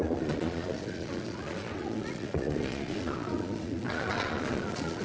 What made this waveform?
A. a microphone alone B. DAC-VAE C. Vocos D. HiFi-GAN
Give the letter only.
C